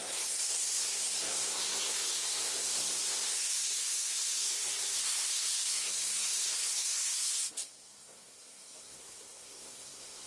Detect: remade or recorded remade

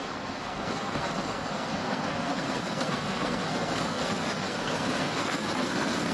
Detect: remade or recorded remade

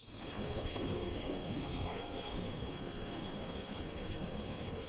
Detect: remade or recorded remade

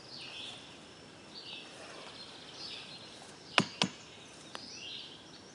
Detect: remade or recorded recorded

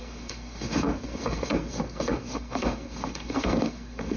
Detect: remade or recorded remade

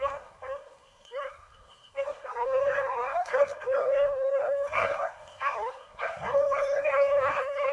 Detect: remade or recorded remade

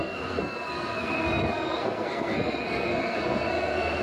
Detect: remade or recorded remade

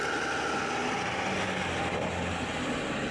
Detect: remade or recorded recorded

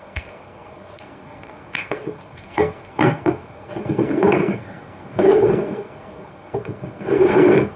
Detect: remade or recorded remade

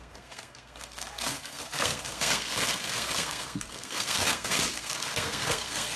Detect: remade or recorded remade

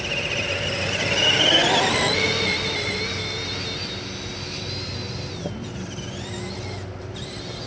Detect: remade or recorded recorded